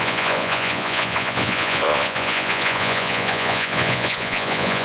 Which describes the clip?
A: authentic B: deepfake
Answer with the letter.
B